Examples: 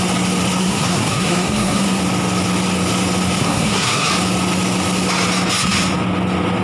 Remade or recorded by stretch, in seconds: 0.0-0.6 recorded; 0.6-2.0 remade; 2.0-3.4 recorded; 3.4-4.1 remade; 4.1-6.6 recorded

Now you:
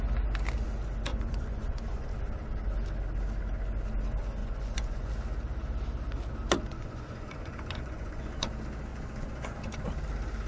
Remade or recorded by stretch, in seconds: 0.0-1.1 recorded; 1.1-2.1 remade; 2.1-4.4 recorded; 4.4-5.1 remade; 5.1-6.7 recorded; 6.7-8.5 remade; 8.5-8.9 recorded; 8.9-9.6 remade; 9.6-10.5 recorded

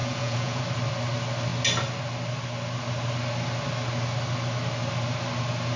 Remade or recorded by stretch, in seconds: 0.0-0.6 remade; 0.6-5.8 recorded